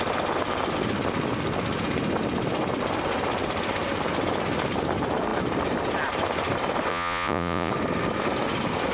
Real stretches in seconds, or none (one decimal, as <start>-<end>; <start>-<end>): 0.0-6.9; 7.7-8.9